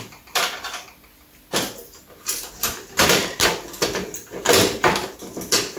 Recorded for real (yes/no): yes